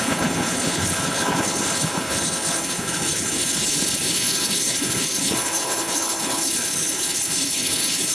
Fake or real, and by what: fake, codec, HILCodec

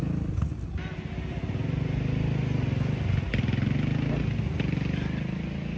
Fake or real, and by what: real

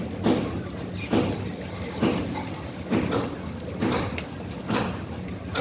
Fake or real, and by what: real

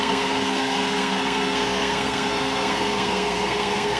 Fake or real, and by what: fake, codec, SNAC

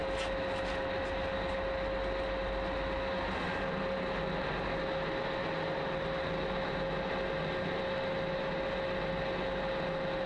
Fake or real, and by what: real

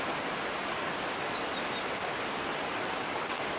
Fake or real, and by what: real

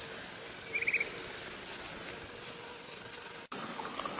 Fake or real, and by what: real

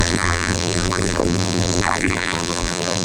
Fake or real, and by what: fake, vocoder, BigVGAN v2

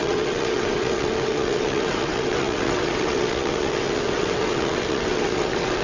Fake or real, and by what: fake, vocoder, WaveNeXt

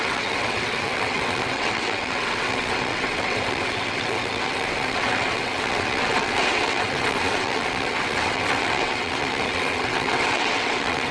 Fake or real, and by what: fake, vocoder, WaveNeXt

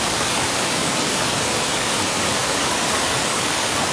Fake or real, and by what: fake, codec, DAC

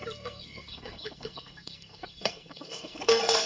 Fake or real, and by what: fake, codec, SNAC